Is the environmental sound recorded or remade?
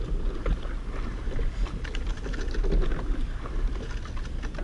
recorded